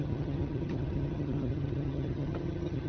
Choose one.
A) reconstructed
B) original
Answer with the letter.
A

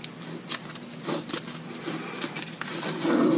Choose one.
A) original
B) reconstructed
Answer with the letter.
A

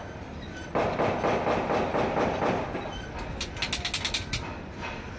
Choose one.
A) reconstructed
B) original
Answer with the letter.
B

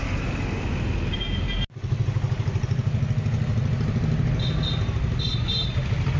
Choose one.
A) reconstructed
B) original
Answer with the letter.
B